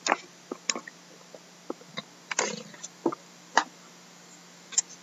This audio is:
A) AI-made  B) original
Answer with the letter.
B